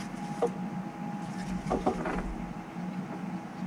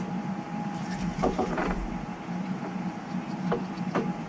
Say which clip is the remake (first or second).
second